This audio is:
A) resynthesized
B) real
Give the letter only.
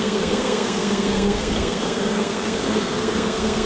A